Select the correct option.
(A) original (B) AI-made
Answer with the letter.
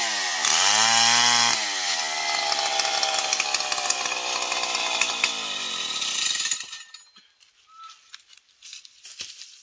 A